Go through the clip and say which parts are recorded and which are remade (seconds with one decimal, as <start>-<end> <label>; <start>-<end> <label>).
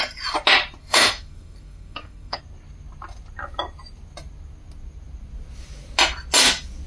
0.0-0.8 recorded; 0.8-2.4 remade; 2.4-6.9 recorded